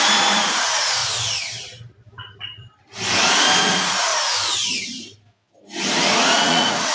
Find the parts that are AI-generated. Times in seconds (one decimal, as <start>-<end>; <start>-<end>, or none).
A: 0.0-1.0; 3.6-4.1; 6.2-6.9